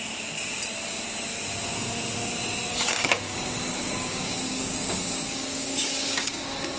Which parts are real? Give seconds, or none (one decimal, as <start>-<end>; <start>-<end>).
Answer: 0.0-2.7